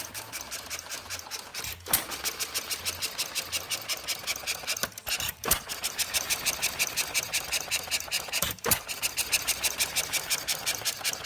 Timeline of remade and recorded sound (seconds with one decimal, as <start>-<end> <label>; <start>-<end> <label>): 0.0-1.5 remade; 1.5-5.1 recorded; 5.1-11.3 remade